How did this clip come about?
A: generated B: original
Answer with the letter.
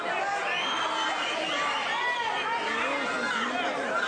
B